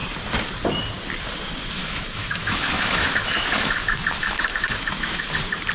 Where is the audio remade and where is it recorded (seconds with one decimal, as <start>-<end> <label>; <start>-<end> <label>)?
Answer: 0.0-1.8 recorded; 1.8-5.2 remade; 5.2-5.7 recorded